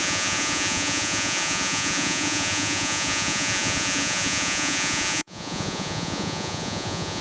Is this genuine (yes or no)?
no